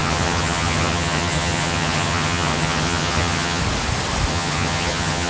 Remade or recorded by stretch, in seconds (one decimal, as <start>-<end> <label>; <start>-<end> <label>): 0.0-3.6 remade; 3.6-4.3 recorded; 4.3-5.3 remade